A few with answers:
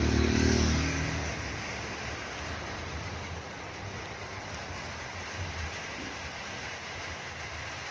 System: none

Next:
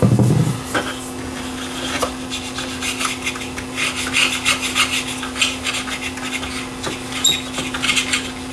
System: none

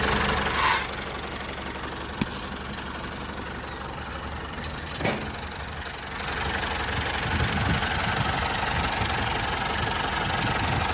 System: none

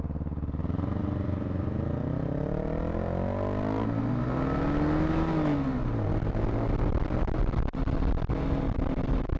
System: none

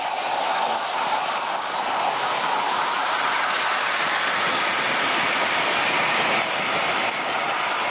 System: none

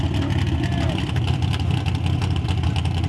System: none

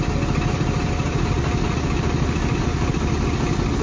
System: none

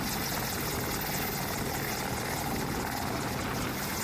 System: none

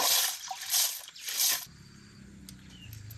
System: none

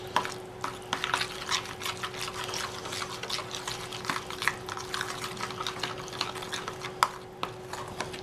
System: none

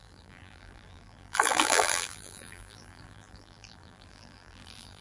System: vocoder, BigVGAN v2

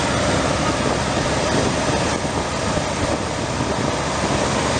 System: none